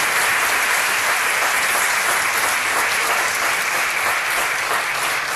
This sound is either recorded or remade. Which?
recorded